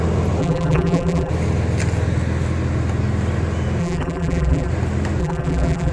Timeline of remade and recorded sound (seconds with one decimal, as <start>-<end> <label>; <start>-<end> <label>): 0.0-0.4 recorded; 0.4-1.3 remade; 1.3-3.8 recorded; 3.8-4.7 remade; 4.7-5.2 recorded; 5.2-5.9 remade